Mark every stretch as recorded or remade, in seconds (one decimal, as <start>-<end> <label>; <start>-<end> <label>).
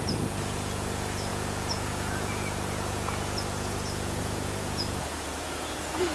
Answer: 0.0-6.1 remade